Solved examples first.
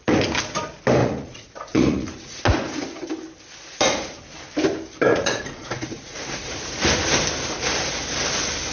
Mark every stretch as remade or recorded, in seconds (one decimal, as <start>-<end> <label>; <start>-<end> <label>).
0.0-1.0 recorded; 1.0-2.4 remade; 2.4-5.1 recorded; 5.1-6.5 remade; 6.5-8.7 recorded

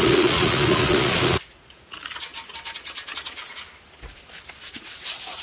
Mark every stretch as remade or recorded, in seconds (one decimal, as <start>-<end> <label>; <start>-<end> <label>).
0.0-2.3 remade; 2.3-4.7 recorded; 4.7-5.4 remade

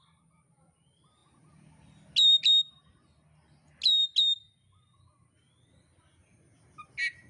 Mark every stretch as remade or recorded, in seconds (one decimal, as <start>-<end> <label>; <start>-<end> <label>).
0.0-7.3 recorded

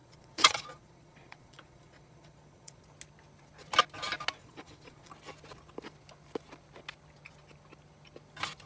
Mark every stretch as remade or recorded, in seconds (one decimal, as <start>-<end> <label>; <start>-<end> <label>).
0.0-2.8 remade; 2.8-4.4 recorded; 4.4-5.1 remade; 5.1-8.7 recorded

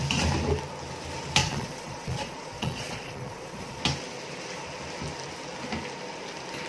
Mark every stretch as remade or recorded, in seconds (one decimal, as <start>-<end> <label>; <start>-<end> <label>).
0.0-1.4 recorded; 1.4-3.8 remade; 3.8-6.7 recorded

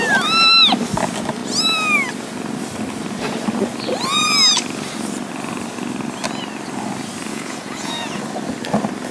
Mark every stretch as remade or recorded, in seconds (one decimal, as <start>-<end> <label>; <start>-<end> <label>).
0.0-7.3 recorded; 7.3-8.2 remade; 8.2-9.1 recorded

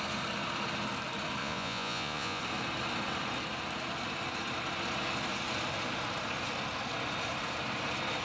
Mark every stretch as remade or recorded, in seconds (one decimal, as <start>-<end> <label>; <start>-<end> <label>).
0.0-1.4 recorded; 1.4-2.4 remade; 2.4-8.2 recorded

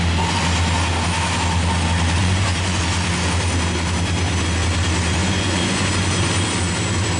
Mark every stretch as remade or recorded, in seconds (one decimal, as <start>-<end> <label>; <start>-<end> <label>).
0.0-2.2 recorded; 2.2-2.8 remade; 2.8-5.2 recorded; 5.2-6.3 remade; 6.3-7.2 recorded